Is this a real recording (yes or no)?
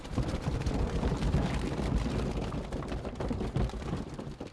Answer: yes